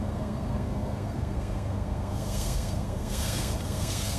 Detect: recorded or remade remade